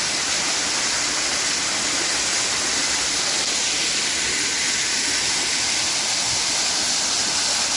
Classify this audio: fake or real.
real